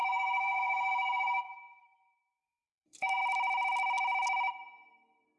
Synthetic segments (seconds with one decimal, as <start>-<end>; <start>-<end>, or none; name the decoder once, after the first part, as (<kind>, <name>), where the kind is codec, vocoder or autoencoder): 0.0-3.2 (codec, SNAC)